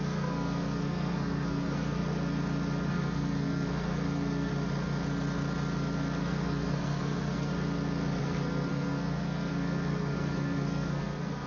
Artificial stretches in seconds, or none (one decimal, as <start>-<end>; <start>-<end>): 0.0-2.0; 2.9-4.5; 6.2-7.5; 8.2-11.5